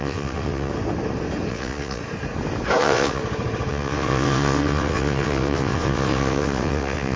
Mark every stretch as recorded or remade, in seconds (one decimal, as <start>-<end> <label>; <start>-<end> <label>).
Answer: 0.0-0.7 remade; 0.7-1.5 recorded; 1.5-2.0 remade; 2.0-2.8 recorded; 2.8-3.2 remade; 3.2-3.7 recorded; 3.7-7.2 remade